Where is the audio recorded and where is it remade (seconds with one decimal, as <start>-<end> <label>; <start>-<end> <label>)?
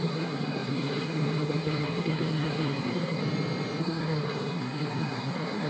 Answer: 0.0-3.2 remade; 3.2-3.8 recorded; 3.8-5.7 remade